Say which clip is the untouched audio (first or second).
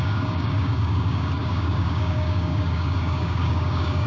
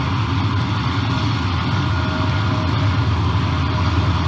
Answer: second